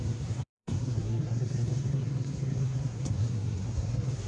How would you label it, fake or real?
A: fake